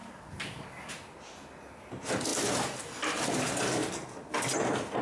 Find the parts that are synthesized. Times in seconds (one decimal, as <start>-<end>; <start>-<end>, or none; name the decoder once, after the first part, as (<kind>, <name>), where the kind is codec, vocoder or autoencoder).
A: 0.0-0.9 (codec, DAC)